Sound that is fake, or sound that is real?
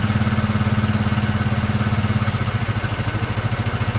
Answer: real